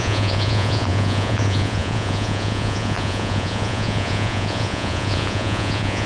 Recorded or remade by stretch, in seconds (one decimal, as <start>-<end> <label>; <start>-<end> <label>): 0.0-6.1 remade